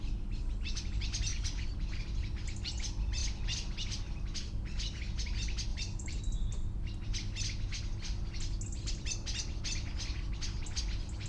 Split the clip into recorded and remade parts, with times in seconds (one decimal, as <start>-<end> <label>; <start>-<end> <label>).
0.0-1.3 recorded; 1.3-2.0 remade; 2.0-5.7 recorded; 5.7-6.2 remade; 6.2-11.3 recorded